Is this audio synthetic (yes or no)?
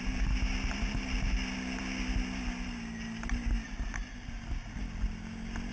no